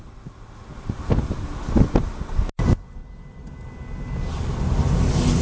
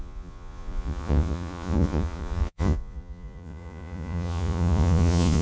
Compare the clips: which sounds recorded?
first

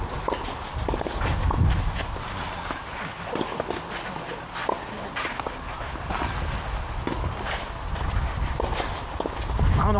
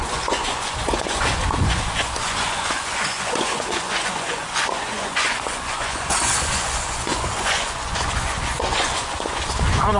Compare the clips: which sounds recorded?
first